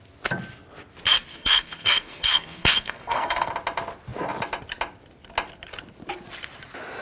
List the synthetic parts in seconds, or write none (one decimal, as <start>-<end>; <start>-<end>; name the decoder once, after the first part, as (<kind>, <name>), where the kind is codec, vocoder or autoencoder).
1.3-3.5 (codec, SNAC)